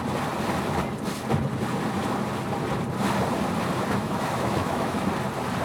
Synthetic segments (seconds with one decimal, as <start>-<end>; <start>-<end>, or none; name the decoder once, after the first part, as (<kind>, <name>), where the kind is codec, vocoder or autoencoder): 4.0-5.1 (autoencoder, DAC-VAE)